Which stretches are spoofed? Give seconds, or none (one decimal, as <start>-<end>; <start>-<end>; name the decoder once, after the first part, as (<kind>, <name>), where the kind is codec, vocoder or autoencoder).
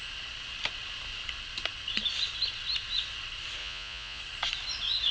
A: 3.6-4.2 (vocoder, Vocos)